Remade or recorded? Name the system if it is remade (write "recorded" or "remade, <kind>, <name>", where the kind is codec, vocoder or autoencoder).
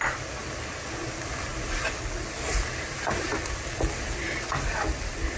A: recorded